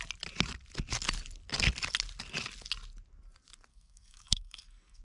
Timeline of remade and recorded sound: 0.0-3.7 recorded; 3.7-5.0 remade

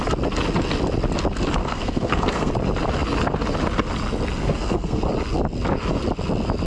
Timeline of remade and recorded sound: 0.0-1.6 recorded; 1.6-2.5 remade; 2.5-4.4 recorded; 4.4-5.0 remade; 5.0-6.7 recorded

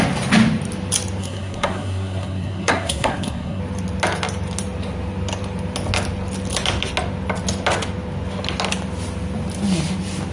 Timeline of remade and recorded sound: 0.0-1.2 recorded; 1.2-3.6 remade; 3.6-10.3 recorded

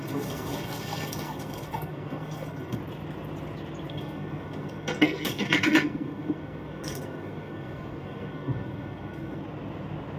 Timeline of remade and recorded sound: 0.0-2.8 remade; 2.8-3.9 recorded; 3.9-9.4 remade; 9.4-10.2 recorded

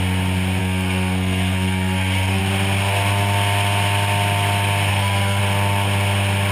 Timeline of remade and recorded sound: 0.0-0.6 recorded; 0.6-2.4 remade; 2.4-4.9 recorded; 4.9-5.4 remade; 5.4-6.5 recorded

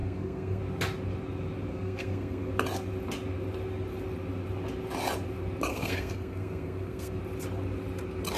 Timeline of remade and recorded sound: 0.0-0.6 remade; 0.6-1.7 recorded; 1.7-2.5 remade; 2.5-5.7 recorded; 5.7-7.2 remade; 7.2-8.4 recorded